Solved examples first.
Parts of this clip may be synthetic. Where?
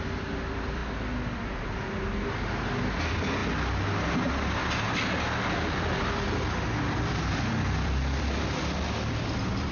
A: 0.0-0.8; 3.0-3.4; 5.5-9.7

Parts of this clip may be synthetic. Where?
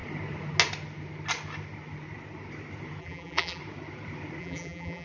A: 3.0-3.6; 4.4-5.0